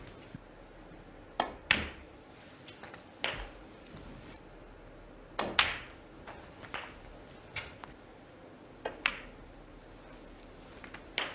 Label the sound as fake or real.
real